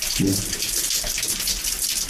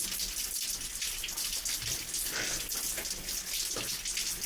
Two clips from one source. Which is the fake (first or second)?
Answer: first